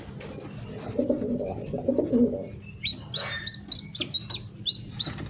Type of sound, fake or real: real